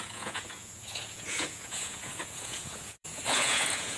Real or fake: fake